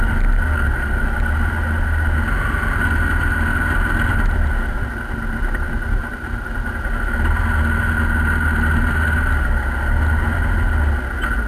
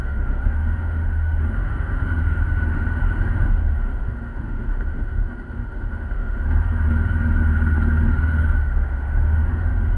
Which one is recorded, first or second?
first